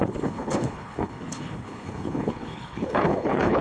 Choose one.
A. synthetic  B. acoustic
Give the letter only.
A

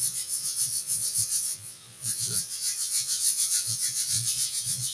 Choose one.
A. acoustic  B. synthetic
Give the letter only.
B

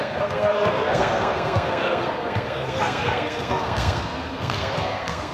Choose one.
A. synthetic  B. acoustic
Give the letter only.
A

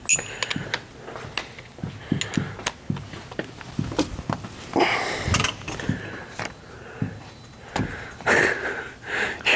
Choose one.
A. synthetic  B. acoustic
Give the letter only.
B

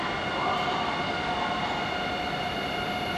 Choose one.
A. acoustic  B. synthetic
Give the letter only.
A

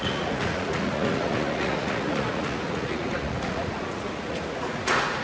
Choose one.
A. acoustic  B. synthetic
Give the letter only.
B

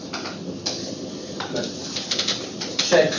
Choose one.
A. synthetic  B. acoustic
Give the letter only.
B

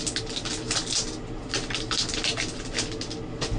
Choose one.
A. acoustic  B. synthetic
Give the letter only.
A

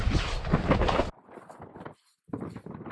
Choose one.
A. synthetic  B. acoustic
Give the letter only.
B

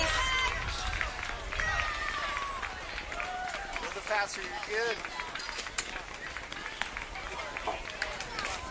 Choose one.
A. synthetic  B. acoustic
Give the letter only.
B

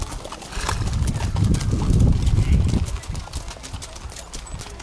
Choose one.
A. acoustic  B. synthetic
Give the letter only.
A